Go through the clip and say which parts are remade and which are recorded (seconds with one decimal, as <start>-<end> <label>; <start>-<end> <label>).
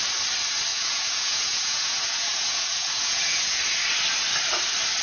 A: 0.0-0.7 recorded; 0.7-3.6 remade; 3.6-5.0 recorded